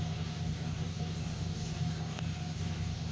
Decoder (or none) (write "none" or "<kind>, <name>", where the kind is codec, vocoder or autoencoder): codec, DAC